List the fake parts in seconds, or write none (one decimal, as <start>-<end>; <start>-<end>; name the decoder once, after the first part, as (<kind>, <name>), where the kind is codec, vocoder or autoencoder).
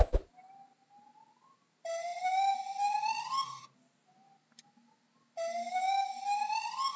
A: 5.6-6.2 (codec, DAC)